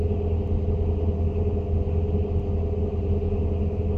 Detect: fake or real real